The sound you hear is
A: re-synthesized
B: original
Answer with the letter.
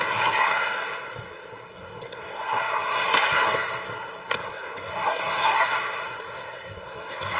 A